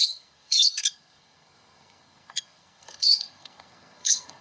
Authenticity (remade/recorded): remade